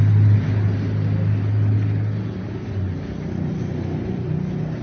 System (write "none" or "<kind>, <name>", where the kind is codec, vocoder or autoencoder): none